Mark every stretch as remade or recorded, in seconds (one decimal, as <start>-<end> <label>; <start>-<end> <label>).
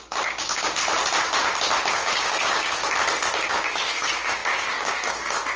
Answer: 0.0-0.8 remade; 0.8-1.9 recorded; 1.9-2.8 remade; 2.8-3.5 recorded; 3.5-5.6 remade